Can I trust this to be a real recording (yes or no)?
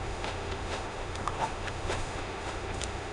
no